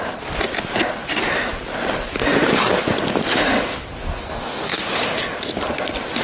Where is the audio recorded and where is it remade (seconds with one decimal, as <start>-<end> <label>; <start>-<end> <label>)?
0.0-4.1 recorded; 4.1-4.8 remade; 4.8-6.2 recorded